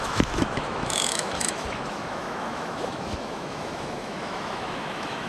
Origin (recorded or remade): remade